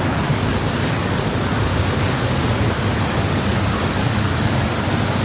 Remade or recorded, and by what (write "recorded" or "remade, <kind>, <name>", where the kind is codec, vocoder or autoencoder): remade, codec, DAC